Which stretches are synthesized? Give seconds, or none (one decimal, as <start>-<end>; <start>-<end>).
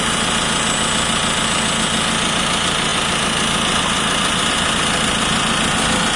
none